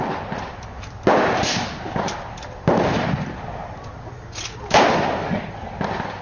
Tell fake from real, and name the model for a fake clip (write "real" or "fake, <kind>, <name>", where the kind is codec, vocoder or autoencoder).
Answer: real